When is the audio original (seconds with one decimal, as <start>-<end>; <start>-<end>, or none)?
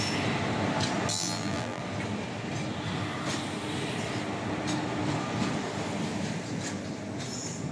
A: 0.0-1.1; 1.8-7.7